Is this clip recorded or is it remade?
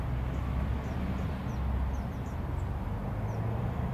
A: recorded